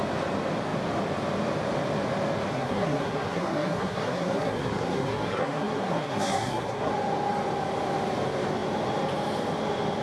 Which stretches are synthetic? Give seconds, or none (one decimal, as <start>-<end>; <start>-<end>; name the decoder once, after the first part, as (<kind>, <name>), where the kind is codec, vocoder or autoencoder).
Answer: 2.5-6.9 (codec, SNAC)

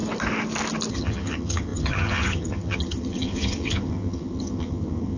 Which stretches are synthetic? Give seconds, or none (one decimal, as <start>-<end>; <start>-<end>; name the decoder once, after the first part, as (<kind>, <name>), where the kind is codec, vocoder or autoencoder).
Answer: 0.9-5.2 (vocoder, HiFi-GAN)

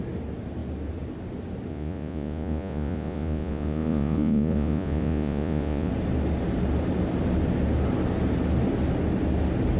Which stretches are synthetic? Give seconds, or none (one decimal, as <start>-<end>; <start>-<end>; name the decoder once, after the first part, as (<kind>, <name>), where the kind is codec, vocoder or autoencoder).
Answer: 1.7-5.9 (vocoder, Vocos)